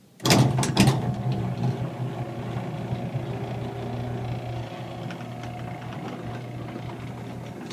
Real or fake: real